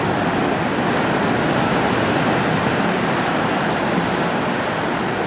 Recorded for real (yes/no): yes